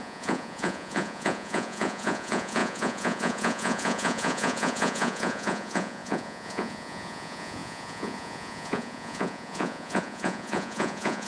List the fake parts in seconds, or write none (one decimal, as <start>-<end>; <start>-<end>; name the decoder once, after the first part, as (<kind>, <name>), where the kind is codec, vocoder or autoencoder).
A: 0.0-11.3 (vocoder, Vocos)